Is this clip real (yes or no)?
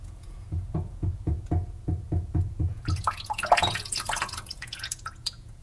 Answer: no